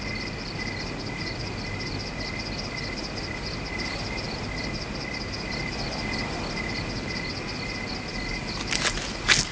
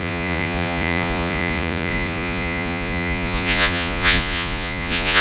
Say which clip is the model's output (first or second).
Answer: second